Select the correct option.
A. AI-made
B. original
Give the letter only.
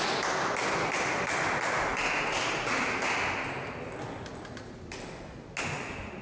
B